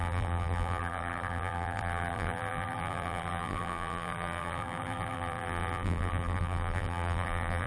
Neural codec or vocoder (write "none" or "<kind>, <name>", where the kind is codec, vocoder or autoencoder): vocoder, BigVGAN v2